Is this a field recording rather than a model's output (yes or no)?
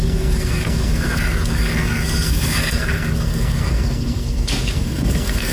no